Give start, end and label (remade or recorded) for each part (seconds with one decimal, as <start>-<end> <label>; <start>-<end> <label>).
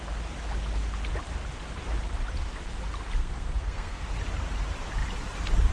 0.0-3.2 recorded; 3.2-4.1 remade; 4.1-5.7 recorded